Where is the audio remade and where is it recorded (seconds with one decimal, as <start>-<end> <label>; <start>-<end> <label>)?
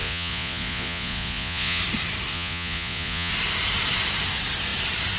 0.0-1.8 remade; 1.8-2.3 recorded; 2.3-3.3 remade; 3.3-5.2 recorded